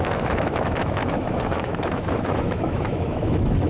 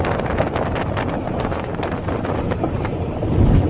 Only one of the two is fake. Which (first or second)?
first